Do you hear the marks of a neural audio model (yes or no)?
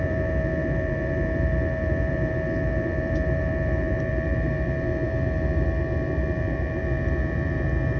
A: yes